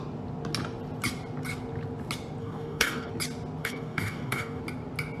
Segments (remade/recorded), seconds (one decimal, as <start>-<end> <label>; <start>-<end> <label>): 0.0-2.4 recorded; 2.4-3.1 remade; 3.1-3.6 recorded; 3.6-4.6 remade; 4.6-5.2 recorded